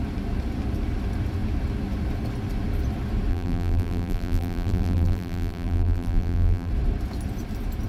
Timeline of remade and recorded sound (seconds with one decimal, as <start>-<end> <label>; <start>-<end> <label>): 0.0-3.3 recorded; 3.3-6.7 remade; 6.7-7.9 recorded